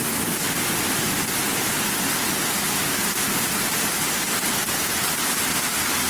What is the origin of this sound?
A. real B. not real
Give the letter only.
A